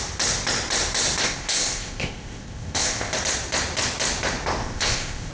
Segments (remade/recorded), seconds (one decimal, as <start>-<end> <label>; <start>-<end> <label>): 0.0-1.2 recorded; 1.2-3.1 remade; 3.1-4.6 recorded; 4.6-5.3 remade